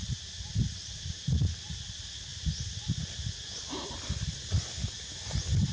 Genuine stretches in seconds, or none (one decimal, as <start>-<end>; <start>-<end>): 1.6-5.7